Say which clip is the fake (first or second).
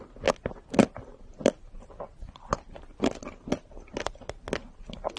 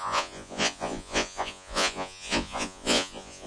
second